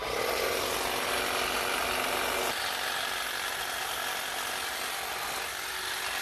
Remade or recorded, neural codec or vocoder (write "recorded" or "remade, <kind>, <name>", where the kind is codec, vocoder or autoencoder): recorded